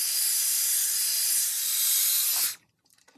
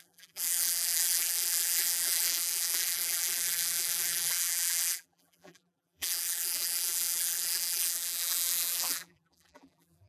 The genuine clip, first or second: first